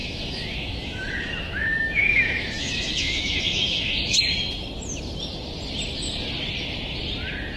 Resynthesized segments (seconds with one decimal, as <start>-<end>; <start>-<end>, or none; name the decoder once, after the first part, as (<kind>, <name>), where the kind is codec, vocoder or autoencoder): 0.0-4.2 (autoencoder, DAC-VAE)